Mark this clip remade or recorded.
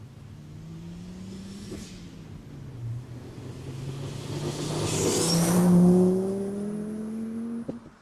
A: recorded